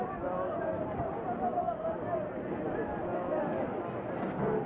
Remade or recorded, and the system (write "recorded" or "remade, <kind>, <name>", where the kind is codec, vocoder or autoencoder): recorded